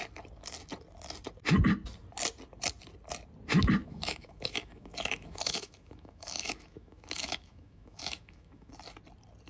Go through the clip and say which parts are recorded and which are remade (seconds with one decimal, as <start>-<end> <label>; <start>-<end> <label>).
0.0-3.8 recorded; 3.8-8.7 remade; 8.7-9.5 recorded

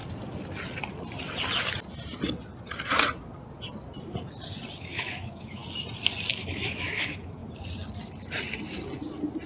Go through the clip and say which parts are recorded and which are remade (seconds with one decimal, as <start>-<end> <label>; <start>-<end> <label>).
0.0-4.8 recorded; 4.8-5.6 remade; 5.6-6.3 recorded; 6.3-7.4 remade; 7.4-9.5 recorded

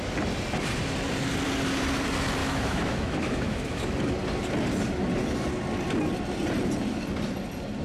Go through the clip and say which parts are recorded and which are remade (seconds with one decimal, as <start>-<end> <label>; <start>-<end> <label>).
0.0-2.4 recorded; 2.4-4.0 remade; 4.0-7.8 recorded